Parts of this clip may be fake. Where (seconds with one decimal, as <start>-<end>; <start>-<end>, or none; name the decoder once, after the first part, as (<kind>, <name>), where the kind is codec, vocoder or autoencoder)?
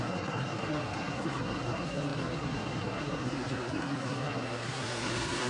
0.0-5.5 (codec, SNAC)